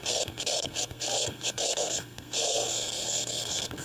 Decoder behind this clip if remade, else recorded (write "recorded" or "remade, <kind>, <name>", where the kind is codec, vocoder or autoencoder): remade, codec, SNAC